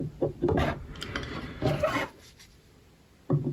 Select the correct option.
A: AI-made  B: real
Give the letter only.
A